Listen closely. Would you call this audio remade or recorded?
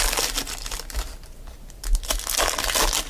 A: recorded